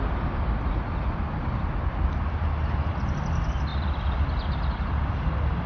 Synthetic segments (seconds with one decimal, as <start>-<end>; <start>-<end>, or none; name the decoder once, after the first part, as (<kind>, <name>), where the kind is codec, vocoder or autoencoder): none